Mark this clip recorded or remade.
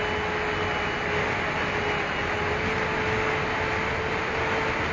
recorded